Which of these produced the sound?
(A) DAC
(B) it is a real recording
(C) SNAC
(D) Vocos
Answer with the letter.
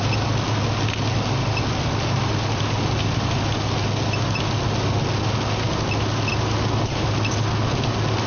B